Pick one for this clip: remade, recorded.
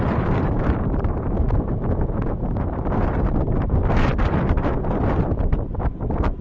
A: remade